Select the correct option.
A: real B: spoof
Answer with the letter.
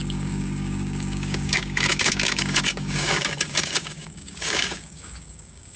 B